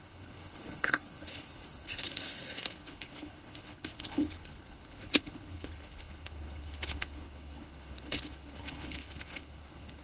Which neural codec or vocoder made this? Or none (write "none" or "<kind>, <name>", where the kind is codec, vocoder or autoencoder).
codec, HILCodec